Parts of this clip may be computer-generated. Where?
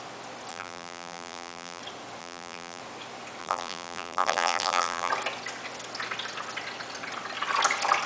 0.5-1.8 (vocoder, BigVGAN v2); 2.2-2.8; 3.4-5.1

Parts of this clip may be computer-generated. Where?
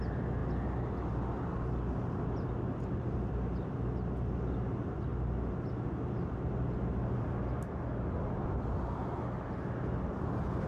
none